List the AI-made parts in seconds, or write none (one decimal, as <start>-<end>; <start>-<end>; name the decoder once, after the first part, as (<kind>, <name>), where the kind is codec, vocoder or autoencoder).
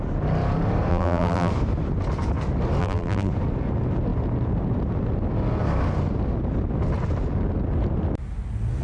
0.9-1.5 (vocoder, BigVGAN v2); 2.8-3.3